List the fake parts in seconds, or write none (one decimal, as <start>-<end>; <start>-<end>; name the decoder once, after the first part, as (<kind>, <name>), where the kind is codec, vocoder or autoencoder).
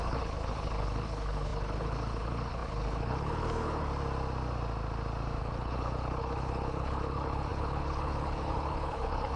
0.0-3.9 (codec, HILCodec); 5.4-9.4